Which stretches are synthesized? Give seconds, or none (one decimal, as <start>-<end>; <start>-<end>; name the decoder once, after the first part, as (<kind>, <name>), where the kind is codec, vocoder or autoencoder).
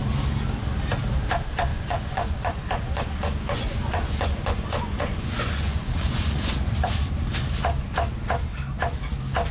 1.7-6.5 (vocoder, Vocos)